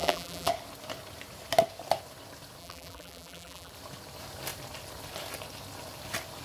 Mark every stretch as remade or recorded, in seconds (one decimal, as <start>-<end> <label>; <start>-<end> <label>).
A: 0.0-0.5 remade; 0.5-2.6 recorded; 2.6-3.7 remade; 3.7-6.4 recorded